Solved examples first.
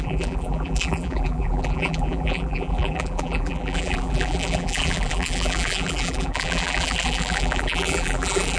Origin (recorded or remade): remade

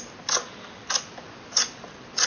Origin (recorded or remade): recorded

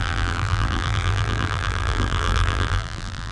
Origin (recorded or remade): remade